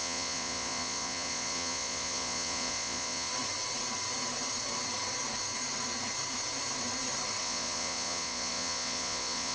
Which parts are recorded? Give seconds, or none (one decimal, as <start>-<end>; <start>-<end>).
3.3-7.4